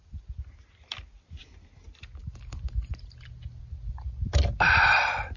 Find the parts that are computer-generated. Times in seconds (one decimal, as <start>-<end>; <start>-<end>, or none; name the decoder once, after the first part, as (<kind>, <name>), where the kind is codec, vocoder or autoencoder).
none